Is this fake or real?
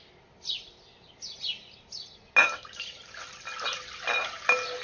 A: real